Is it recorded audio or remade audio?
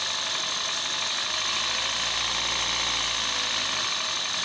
recorded